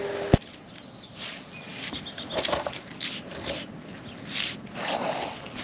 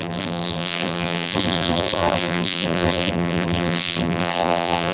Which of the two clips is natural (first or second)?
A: first